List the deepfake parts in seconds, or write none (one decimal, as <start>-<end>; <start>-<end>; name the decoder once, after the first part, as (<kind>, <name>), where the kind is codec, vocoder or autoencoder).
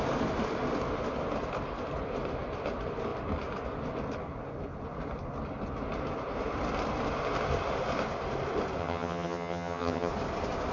8.8-10.1 (vocoder, HiFi-GAN)